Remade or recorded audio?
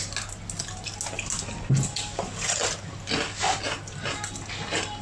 recorded